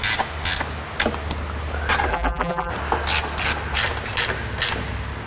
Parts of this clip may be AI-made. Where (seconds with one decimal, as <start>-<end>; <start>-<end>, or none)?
2.1-2.7